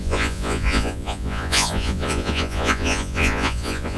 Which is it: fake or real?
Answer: fake